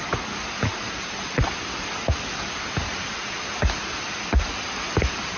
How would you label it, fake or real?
real